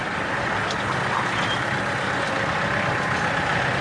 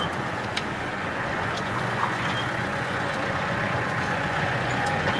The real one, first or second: first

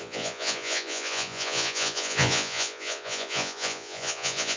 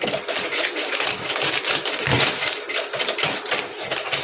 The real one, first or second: second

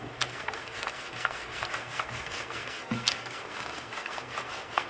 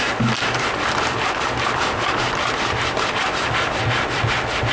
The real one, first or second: second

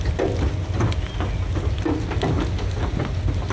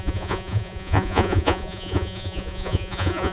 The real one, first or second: first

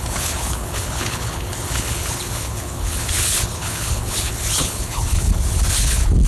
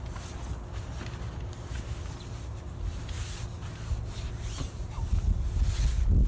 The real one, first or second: second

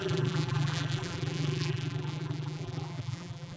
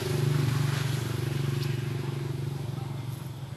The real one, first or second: second